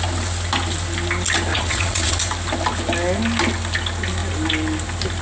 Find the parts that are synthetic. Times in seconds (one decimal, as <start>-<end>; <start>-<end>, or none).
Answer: 1.5-2.2